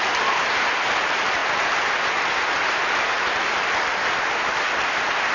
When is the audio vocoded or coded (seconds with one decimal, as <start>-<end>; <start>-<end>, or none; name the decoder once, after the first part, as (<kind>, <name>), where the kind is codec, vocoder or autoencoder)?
none